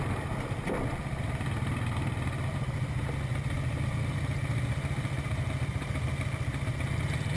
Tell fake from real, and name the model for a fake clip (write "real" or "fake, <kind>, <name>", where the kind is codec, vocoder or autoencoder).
real